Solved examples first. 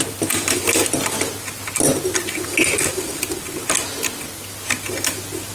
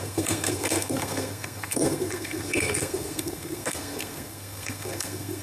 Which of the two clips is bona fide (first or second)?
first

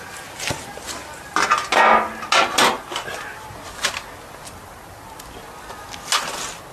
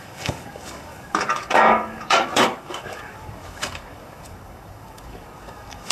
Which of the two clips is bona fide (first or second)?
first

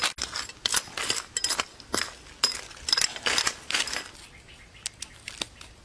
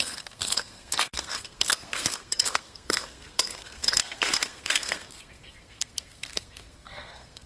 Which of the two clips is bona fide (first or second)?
first